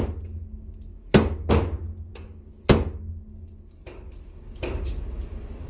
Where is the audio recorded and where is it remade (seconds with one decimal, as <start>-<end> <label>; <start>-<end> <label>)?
0.0-0.9 recorded; 0.9-1.5 remade; 1.5-2.1 recorded; 2.1-3.0 remade; 3.0-5.7 recorded